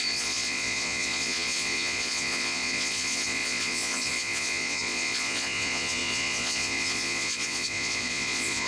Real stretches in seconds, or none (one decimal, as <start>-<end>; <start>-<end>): none